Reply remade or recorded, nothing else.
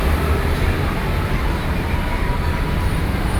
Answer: recorded